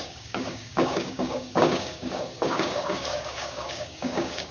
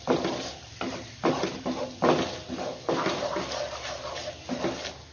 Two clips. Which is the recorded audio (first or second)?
second